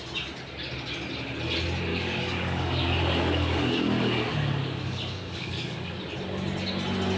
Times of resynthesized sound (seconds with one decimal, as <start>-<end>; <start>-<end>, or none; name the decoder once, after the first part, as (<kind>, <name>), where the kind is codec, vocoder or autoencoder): 1.9-6.0 (codec, DAC)